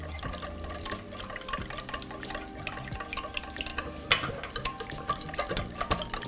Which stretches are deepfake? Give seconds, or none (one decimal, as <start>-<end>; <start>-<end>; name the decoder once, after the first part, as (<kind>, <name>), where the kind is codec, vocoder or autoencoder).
none